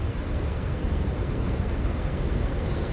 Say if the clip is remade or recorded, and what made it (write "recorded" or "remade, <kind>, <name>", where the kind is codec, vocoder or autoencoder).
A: remade, codec, SNAC